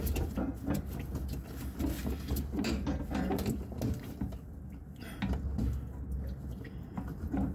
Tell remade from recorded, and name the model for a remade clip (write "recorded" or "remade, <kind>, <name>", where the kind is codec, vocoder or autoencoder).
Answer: recorded